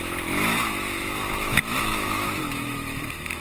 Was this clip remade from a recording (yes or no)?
yes